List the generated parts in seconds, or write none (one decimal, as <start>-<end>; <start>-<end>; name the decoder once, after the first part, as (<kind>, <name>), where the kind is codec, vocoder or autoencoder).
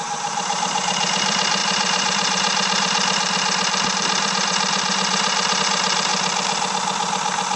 0.0-6.1 (vocoder, BigVGAN v2)